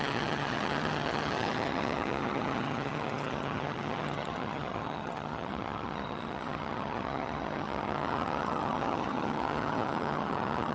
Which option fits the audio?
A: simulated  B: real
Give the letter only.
A